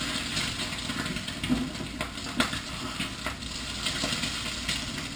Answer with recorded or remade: recorded